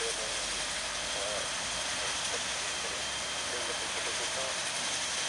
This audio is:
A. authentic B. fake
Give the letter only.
A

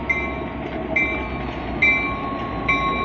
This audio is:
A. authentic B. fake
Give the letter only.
A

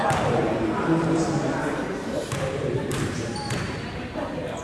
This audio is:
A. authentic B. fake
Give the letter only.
B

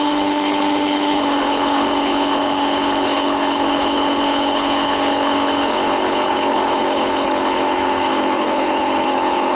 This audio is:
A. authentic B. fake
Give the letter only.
B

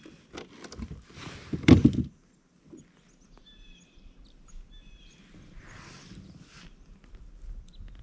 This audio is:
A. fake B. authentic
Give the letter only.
B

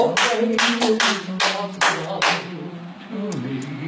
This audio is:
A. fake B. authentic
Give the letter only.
B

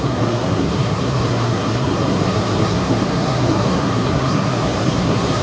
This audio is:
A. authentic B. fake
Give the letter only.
B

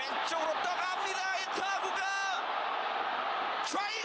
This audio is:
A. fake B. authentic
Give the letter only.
B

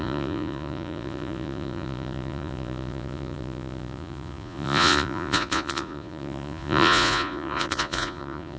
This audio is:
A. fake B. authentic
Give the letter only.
A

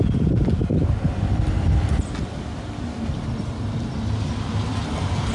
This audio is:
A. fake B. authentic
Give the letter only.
B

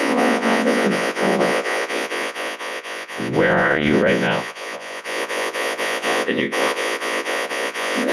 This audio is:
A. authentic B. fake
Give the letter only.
B